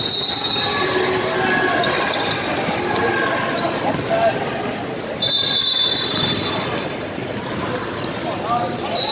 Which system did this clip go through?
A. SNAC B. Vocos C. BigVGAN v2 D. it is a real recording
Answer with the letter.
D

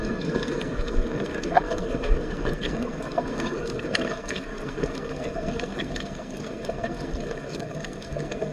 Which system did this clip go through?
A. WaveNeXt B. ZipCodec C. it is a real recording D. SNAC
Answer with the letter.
D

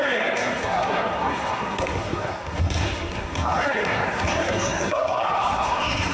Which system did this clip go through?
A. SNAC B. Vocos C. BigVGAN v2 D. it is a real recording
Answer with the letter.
A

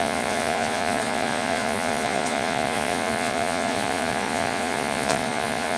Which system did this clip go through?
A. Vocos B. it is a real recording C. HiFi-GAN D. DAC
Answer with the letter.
A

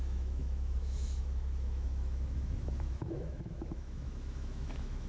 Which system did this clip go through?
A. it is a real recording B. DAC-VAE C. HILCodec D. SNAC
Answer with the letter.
B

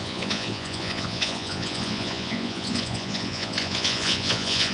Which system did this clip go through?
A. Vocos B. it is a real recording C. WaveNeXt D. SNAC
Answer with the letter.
A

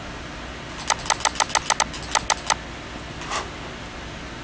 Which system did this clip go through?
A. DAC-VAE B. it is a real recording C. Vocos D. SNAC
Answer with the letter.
B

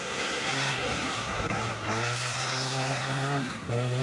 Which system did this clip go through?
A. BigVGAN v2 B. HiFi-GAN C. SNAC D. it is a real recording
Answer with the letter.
C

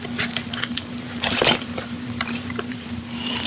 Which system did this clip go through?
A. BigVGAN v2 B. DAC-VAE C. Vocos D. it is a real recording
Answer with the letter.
A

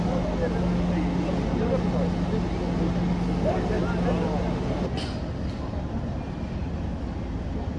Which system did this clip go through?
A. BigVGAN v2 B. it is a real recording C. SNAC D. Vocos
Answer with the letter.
B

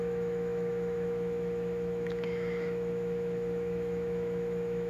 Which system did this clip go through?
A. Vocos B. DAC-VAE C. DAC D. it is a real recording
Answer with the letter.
B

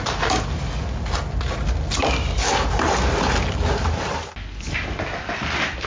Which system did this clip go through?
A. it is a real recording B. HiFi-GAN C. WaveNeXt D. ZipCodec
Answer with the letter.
A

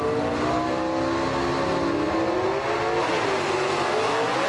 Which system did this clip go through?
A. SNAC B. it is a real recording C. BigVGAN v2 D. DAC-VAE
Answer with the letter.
B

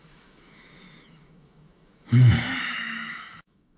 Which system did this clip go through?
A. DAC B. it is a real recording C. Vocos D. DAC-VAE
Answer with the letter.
D